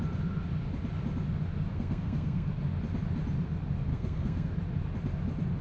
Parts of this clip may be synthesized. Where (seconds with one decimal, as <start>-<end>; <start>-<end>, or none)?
1.7-2.5; 3.9-4.5